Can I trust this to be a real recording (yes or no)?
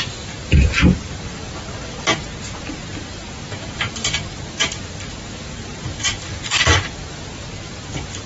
no